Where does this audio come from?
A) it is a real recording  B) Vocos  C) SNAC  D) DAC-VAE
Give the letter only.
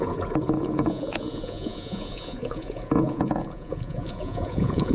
B